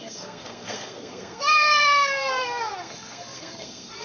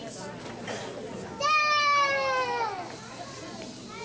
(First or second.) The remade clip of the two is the first